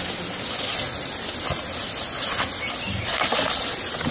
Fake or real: real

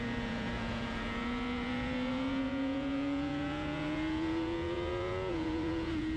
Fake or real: fake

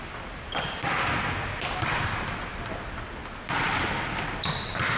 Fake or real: real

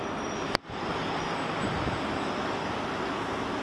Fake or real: real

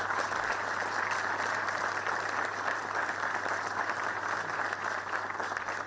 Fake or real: real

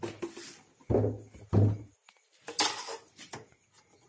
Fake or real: real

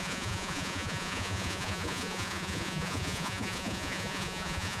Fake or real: fake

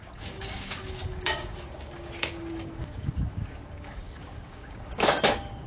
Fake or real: fake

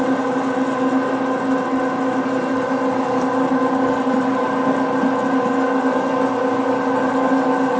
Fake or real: real